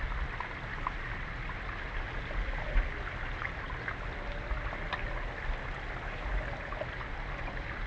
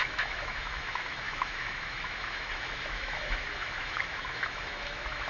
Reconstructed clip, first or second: second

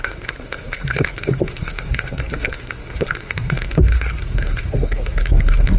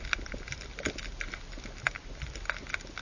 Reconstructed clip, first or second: first